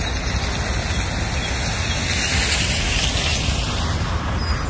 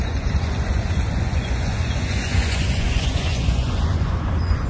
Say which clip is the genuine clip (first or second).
first